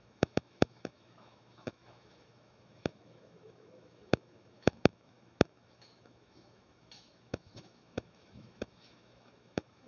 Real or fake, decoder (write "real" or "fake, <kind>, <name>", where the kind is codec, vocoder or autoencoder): fake, autoencoder, DAC-VAE